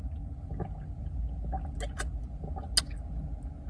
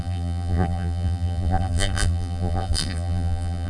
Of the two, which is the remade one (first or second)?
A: second